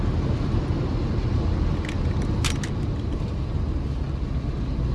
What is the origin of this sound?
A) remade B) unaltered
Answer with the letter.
B